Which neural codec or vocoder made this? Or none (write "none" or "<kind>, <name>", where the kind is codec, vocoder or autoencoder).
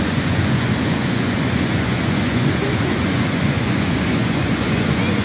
vocoder, Vocos